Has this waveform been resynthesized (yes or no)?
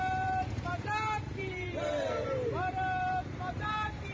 yes